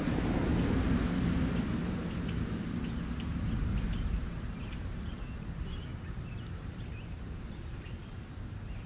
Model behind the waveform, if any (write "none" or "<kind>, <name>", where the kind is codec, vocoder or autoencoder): vocoder, BigVGAN v2